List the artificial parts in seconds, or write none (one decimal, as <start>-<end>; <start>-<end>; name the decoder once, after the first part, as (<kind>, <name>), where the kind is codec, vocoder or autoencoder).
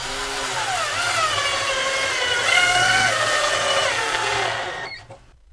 2.5-3.5 (codec, SNAC); 3.9-4.6